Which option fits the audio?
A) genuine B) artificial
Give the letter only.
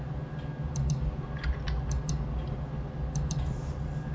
A